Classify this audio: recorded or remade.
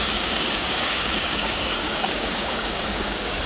remade